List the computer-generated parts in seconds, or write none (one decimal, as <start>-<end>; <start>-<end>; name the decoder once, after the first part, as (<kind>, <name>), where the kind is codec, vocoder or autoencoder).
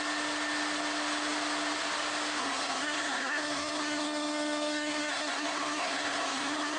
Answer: 2.4-6.8 (codec, SNAC)